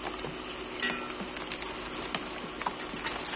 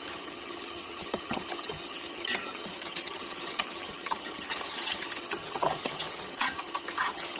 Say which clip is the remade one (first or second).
second